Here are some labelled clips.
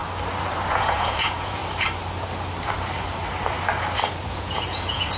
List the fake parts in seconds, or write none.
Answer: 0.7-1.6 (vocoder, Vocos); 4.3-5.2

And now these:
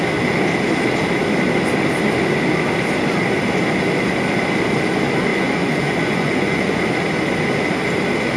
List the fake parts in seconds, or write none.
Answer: 5.3-6.8 (vocoder, Vocos)